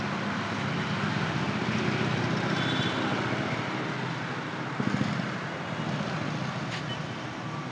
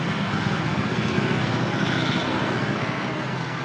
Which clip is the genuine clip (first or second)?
first